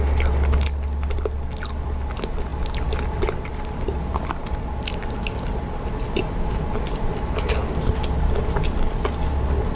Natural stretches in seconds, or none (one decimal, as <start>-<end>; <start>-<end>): 0.0-9.8